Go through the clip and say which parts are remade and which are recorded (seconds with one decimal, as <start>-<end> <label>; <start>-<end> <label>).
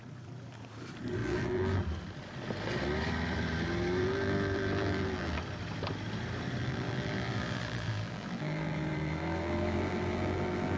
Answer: 0.0-1.2 recorded; 1.2-1.8 remade; 1.8-4.0 recorded; 4.0-5.4 remade; 5.4-6.6 recorded; 6.6-10.8 remade